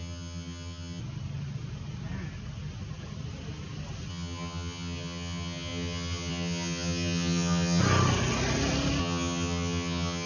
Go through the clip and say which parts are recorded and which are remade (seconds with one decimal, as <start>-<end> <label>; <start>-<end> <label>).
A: 0.0-1.0 remade; 1.0-4.1 recorded; 4.1-7.8 remade; 7.8-9.0 recorded; 9.0-10.3 remade